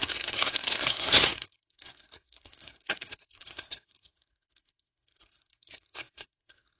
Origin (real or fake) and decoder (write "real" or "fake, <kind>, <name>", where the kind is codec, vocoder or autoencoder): fake, codec, SNAC